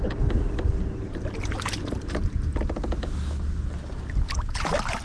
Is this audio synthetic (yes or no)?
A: no